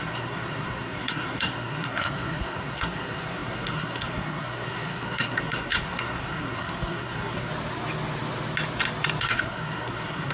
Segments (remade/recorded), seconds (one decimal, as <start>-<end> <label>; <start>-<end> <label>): 0.0-7.5 remade; 7.5-9.2 recorded; 9.2-10.3 remade